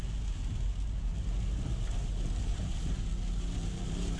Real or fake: real